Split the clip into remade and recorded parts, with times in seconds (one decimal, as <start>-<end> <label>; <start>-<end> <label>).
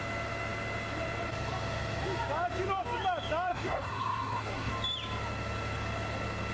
0.0-3.5 recorded; 3.5-4.7 remade; 4.7-6.5 recorded